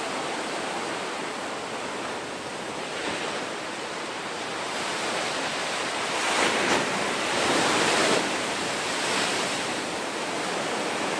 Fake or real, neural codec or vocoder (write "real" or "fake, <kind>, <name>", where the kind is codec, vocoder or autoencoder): fake, vocoder, BigVGAN v2